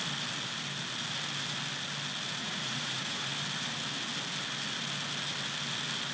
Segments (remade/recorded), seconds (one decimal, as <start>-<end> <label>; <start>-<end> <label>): 0.0-2.4 recorded; 2.4-3.3 remade; 3.3-6.1 recorded